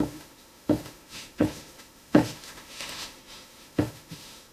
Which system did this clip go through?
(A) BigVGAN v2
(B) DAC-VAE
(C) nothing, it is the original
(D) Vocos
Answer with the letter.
B